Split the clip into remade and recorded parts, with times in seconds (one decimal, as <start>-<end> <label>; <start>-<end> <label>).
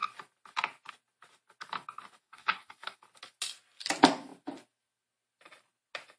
0.0-2.2 recorded; 2.2-3.0 remade; 3.0-6.2 recorded